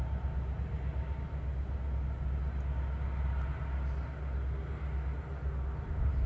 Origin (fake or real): real